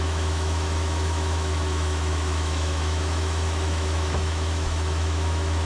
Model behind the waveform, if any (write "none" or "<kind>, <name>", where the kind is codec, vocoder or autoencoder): autoencoder, DAC-VAE